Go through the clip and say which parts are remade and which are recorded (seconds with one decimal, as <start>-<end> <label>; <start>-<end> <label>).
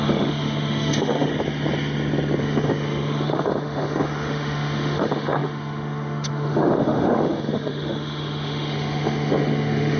0.0-1.3 remade; 1.3-2.4 recorded; 2.4-10.0 remade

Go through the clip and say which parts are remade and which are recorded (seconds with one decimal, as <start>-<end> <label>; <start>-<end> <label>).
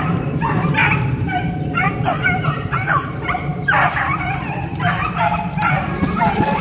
0.0-0.8 remade; 0.8-2.5 recorded; 2.5-6.6 remade